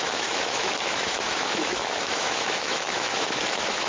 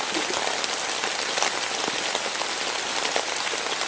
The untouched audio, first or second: second